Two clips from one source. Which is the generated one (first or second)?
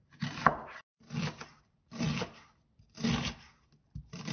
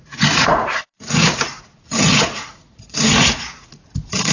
second